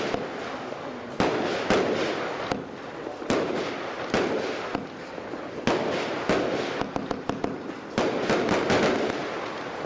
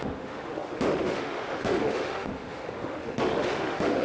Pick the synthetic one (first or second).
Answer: second